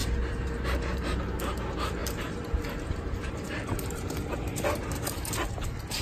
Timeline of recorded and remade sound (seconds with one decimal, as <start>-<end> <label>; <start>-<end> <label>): 0.0-1.2 remade; 1.2-2.0 recorded; 2.0-5.3 remade; 5.3-6.0 recorded